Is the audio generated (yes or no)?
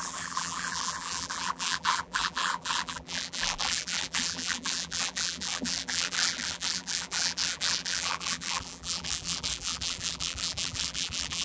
yes